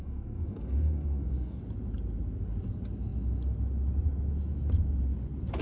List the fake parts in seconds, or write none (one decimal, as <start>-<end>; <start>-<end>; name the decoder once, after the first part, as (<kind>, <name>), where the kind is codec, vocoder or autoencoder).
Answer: 0.0-1.6 (codec, SNAC)